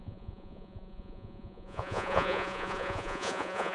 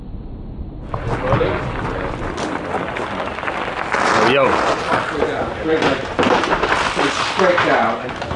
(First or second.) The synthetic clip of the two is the first